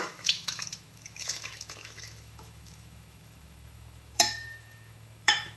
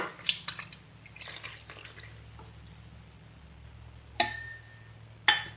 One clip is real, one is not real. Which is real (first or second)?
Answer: second